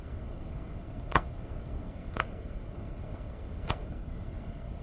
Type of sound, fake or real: fake